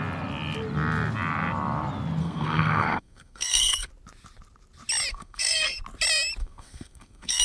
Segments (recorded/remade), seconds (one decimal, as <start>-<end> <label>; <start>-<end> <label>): 0.0-2.2 recorded; 2.2-3.9 remade; 3.9-5.1 recorded; 5.1-5.8 remade; 5.8-6.4 recorded; 6.4-7.4 remade